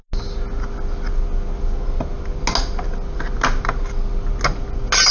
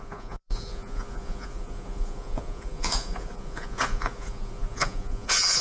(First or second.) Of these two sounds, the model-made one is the second